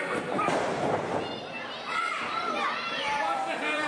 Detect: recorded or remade remade